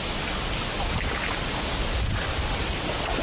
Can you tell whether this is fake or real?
real